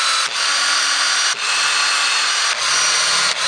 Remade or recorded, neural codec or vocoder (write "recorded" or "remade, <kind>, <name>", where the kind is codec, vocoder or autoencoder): recorded